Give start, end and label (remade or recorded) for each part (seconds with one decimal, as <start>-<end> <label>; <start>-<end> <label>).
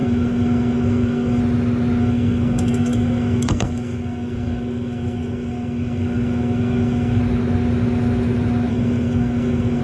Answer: 0.0-1.4 remade; 1.4-2.0 recorded; 2.0-7.2 remade; 7.2-8.7 recorded; 8.7-9.8 remade